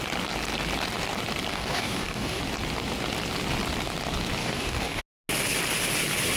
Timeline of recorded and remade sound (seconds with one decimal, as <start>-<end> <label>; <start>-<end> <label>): 0.0-1.5 recorded; 1.5-2.4 remade; 2.4-4.4 recorded; 4.4-5.0 remade; 5.0-6.4 recorded